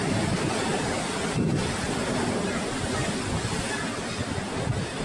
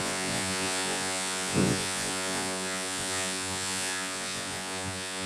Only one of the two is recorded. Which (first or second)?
first